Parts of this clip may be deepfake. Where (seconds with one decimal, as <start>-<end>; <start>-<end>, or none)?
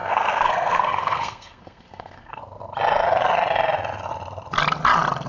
0.0-2.4